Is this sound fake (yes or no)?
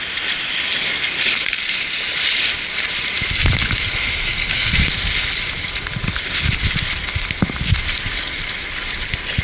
no